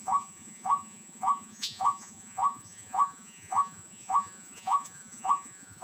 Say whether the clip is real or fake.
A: fake